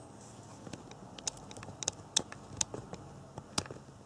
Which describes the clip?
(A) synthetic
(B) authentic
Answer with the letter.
B